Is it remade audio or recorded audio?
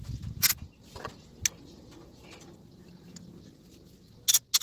recorded